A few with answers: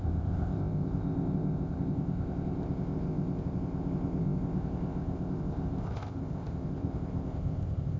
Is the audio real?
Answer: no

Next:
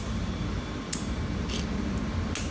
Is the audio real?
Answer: yes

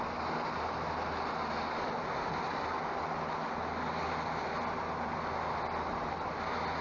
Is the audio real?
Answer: yes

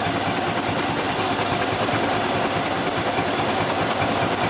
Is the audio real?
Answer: yes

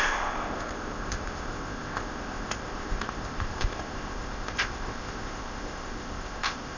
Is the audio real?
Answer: no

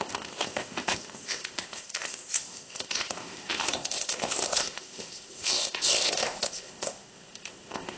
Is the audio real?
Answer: no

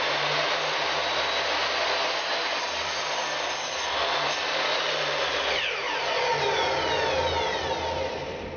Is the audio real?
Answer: yes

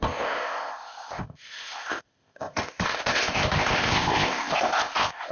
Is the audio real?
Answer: no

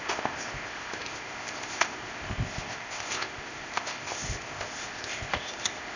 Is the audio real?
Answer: no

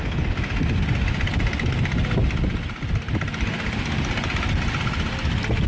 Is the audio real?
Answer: yes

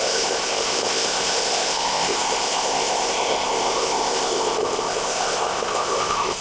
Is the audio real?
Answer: no